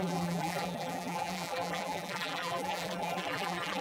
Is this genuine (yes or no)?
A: no